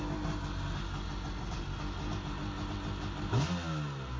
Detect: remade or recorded recorded